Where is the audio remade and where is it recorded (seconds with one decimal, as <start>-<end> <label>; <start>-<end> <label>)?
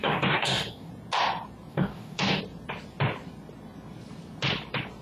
0.0-0.9 remade; 0.9-1.7 recorded; 1.7-2.4 remade; 2.4-5.0 recorded